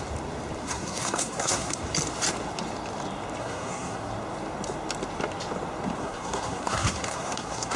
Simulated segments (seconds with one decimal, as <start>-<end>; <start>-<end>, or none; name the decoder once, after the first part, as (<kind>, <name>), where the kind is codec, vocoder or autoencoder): 0.6-1.8 (codec, SNAC); 3.4-4.1; 6.0-7.8